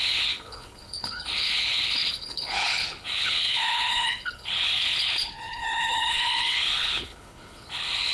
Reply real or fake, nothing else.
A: fake